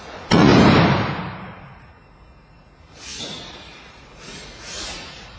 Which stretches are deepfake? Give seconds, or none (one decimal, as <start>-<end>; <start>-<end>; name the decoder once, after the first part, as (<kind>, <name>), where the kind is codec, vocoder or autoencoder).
0.0-0.5 (vocoder, Vocos); 1.2-5.4